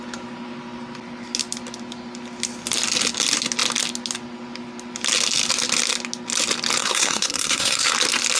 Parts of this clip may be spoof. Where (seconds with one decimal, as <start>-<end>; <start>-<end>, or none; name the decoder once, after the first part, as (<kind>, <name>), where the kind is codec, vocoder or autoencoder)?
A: 6.8-7.9 (codec, SNAC)